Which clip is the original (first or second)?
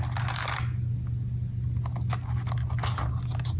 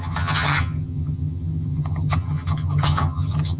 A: first